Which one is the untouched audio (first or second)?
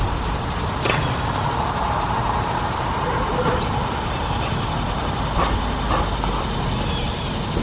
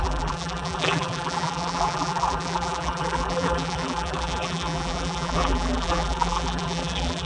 first